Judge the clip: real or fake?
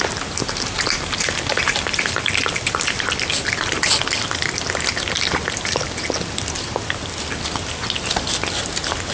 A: real